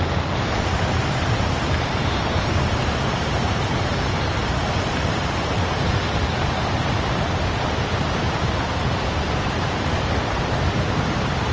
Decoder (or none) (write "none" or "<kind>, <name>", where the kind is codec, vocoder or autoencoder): vocoder, BigVGAN v2